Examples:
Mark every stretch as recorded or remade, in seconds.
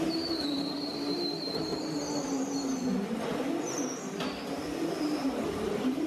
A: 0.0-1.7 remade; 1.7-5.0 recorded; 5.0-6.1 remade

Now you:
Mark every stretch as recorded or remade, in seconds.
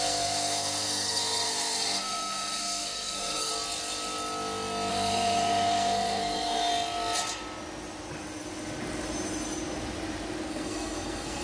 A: 0.0-3.5 remade; 3.5-4.9 recorded; 4.9-6.7 remade; 6.7-10.5 recorded; 10.5-11.4 remade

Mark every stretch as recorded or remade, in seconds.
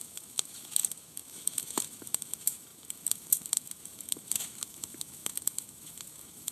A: 0.0-6.5 remade